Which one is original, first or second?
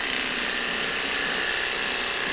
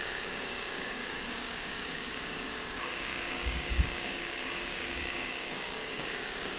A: first